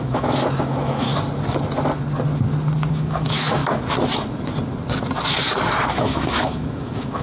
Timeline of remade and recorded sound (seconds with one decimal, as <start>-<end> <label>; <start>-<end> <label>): 0.0-1.1 remade; 1.1-2.9 recorded; 2.9-3.6 remade; 3.6-5.9 recorded; 5.9-7.2 remade

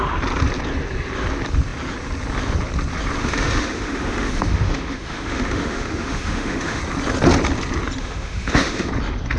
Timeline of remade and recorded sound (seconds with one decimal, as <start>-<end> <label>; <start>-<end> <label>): 0.0-3.2 recorded; 3.2-6.8 remade; 6.8-8.0 recorded; 8.0-8.9 remade; 8.9-9.4 recorded

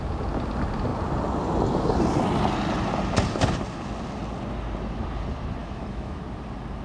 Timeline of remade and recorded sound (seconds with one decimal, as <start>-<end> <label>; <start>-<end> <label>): 0.0-5.6 recorded; 5.6-6.2 remade; 6.2-6.8 recorded

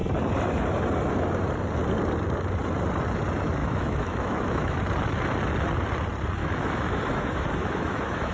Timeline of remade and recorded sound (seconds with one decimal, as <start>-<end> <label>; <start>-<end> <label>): 0.0-3.6 recorded; 3.6-4.8 remade; 4.8-6.4 recorded; 6.4-8.3 remade

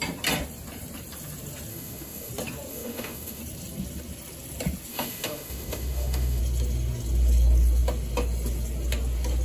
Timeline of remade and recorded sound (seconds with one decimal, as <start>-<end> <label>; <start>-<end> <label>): 0.0-1.7 recorded; 1.7-2.3 remade; 2.3-2.7 recorded; 2.7-3.4 remade; 3.4-4.9 recorded; 4.9-6.4 remade; 6.4-9.4 recorded

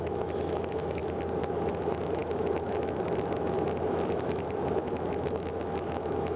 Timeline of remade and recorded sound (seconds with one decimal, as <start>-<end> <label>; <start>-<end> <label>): 0.0-1.0 remade; 1.0-1.5 recorded; 1.5-6.4 remade

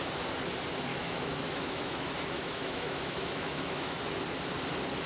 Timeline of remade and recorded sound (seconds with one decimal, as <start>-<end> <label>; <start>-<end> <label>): 0.0-0.9 recorded; 0.9-4.0 remade; 4.0-5.1 recorded